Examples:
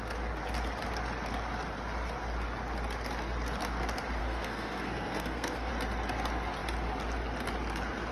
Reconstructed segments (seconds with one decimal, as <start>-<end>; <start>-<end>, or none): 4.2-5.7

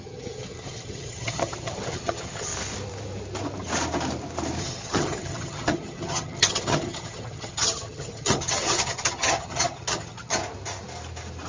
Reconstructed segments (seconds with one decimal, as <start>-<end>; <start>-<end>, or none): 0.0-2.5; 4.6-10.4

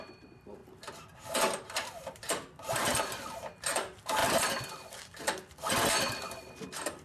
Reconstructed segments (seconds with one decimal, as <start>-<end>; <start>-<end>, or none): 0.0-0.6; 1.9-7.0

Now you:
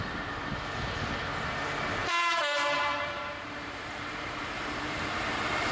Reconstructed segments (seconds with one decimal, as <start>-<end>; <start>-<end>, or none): 2.0-5.7

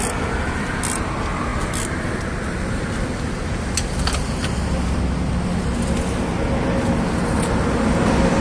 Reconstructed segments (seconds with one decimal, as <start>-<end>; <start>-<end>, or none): none

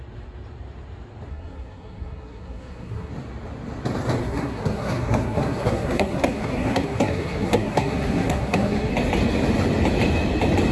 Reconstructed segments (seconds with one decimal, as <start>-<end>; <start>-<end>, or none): 1.3-3.1; 4.2-8.9